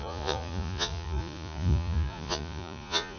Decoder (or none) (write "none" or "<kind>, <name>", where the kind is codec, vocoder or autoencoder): vocoder, Vocos